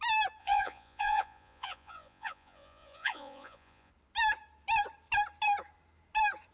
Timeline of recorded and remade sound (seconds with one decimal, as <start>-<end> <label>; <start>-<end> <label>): 0.0-0.4 recorded; 0.4-3.9 remade; 3.9-6.5 recorded